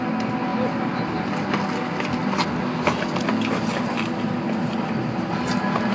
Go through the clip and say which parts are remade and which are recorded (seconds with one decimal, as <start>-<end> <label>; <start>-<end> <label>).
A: 0.0-5.9 recorded